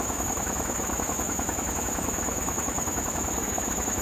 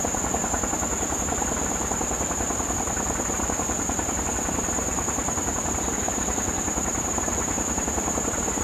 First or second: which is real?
second